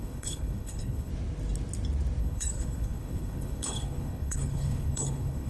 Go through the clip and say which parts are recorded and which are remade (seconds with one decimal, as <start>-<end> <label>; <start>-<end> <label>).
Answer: 0.0-1.1 remade; 1.1-2.2 recorded; 2.2-5.5 remade